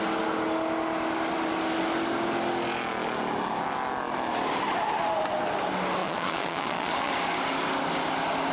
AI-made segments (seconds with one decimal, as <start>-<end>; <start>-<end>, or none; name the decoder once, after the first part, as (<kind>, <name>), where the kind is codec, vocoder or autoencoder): 6.0-7.1 (vocoder, Vocos)